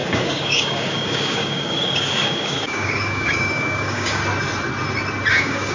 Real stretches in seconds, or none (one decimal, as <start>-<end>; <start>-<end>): 4.2-5.3